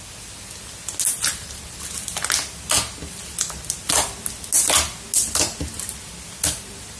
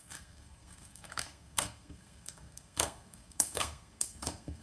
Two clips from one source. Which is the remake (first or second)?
second